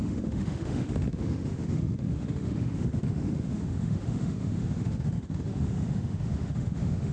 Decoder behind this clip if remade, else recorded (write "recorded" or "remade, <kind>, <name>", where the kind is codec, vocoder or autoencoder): remade, autoencoder, DAC-VAE